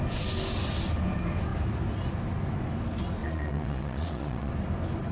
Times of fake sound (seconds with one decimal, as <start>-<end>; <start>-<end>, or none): 3.2-4.5